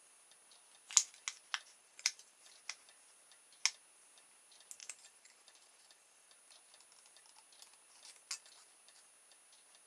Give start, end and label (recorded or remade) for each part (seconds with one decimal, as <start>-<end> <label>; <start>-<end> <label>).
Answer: 0.0-1.8 recorded; 1.8-2.4 remade; 2.4-4.8 recorded; 4.8-6.3 remade; 6.3-9.9 recorded